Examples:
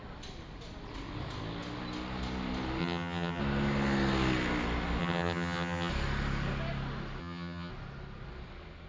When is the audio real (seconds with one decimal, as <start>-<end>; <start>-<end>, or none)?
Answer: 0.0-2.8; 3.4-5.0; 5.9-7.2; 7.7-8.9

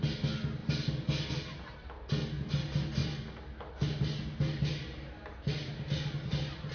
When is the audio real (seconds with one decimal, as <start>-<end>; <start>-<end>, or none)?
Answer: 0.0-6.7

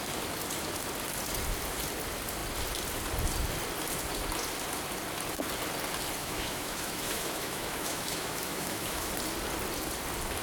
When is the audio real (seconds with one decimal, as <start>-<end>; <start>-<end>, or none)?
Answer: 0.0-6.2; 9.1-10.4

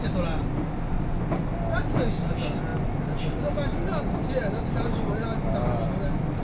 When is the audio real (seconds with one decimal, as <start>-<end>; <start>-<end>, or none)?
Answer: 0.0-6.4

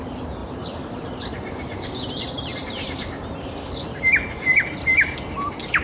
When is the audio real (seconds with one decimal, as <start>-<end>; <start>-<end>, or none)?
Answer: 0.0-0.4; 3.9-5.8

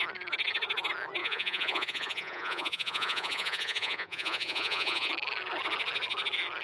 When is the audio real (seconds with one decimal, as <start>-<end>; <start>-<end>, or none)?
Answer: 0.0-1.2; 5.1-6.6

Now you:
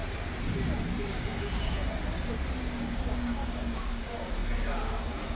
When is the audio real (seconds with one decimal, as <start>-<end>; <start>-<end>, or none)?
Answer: 0.0-1.1; 1.8-2.6

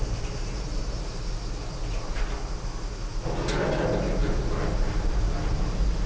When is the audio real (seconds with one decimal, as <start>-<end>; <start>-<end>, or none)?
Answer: 0.0-4.2; 5.2-6.1